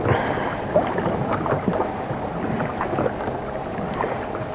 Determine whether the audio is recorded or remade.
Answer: recorded